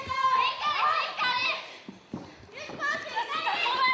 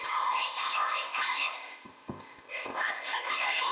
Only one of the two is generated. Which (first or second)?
second